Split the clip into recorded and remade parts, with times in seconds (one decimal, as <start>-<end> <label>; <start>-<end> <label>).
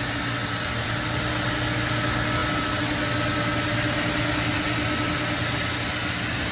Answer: 0.0-6.5 recorded